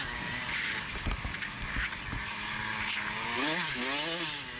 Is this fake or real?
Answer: real